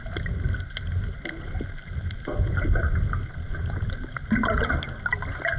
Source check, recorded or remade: recorded